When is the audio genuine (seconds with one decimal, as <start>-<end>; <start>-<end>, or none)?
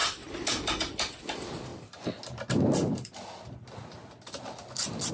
0.0-5.1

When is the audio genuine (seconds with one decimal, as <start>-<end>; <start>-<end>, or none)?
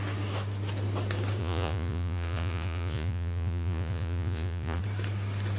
0.0-1.4; 4.8-5.6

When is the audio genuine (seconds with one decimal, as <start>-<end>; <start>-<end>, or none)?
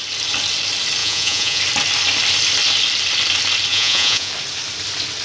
0.0-1.0; 1.6-3.7; 4.3-5.2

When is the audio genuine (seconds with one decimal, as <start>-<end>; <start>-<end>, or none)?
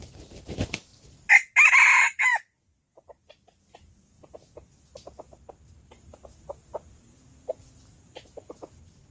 0.0-9.1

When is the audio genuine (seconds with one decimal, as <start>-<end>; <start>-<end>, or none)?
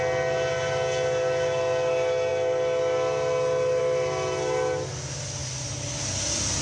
0.0-6.6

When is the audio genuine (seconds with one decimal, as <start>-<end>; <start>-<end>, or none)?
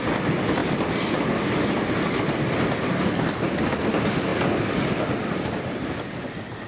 0.0-6.7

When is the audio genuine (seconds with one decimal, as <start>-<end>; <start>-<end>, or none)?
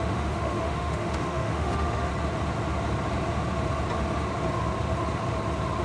2.1-5.8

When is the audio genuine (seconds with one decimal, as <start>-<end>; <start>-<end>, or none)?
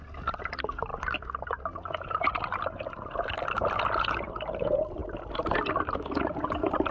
0.0-0.9; 1.6-6.9